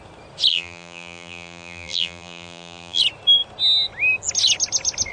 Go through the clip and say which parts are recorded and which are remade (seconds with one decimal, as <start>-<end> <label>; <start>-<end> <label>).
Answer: 0.0-0.5 recorded; 0.5-3.0 remade; 3.0-5.1 recorded

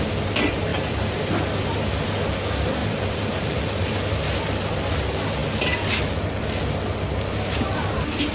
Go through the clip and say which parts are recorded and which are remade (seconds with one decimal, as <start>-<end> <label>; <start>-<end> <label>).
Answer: 0.0-0.7 recorded; 0.7-1.3 remade; 1.3-2.8 recorded; 2.8-3.6 remade; 3.6-8.3 recorded

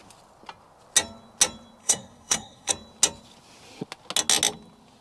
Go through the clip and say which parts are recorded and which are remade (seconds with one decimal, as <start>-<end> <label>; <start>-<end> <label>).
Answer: 0.0-1.8 recorded; 1.8-2.7 remade; 2.7-5.0 recorded

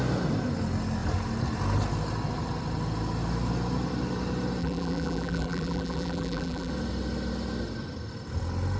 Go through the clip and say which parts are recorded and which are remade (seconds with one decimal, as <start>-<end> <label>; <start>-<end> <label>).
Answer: 0.0-4.6 recorded; 4.6-6.7 remade; 6.7-8.8 recorded

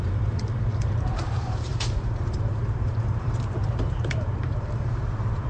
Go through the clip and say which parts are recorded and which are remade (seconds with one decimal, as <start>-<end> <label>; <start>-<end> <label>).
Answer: 0.0-5.5 remade

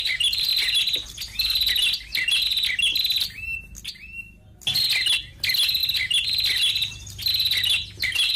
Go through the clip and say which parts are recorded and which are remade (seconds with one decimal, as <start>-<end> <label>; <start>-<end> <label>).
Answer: 0.0-8.4 recorded

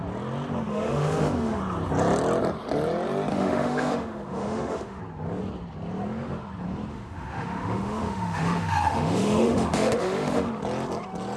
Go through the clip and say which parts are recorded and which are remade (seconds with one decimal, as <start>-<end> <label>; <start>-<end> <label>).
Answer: 0.0-0.7 recorded; 0.7-1.6 remade; 1.6-3.3 recorded; 3.3-5.0 remade; 5.0-6.9 recorded; 6.9-10.5 remade; 10.5-11.4 recorded

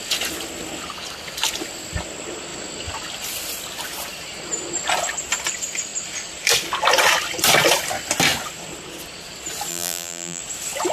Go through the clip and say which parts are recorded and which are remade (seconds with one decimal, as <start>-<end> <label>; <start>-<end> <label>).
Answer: 0.0-9.7 recorded; 9.7-10.4 remade; 10.4-10.9 recorded